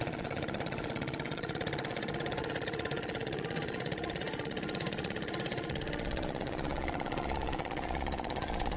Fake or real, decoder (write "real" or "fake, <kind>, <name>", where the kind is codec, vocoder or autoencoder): fake, vocoder, Vocos